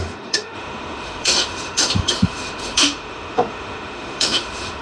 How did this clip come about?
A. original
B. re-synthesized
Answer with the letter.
B